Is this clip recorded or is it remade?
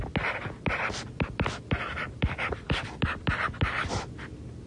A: recorded